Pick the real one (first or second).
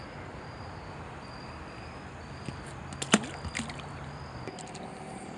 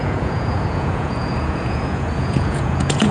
first